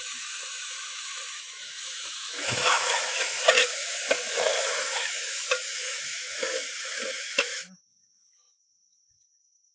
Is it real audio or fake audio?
fake